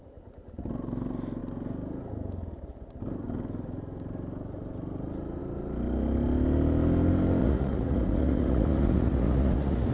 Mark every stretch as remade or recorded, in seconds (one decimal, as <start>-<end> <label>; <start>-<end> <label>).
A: 0.0-7.4 recorded; 7.4-9.9 remade